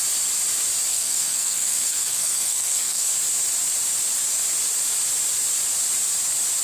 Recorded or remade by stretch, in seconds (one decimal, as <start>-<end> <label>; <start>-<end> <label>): 0.0-0.9 recorded; 0.9-3.1 remade; 3.1-6.6 recorded